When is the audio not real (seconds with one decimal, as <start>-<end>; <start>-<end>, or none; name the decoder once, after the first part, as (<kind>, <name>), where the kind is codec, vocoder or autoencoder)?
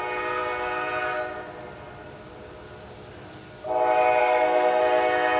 4.2-4.8 (codec, SNAC)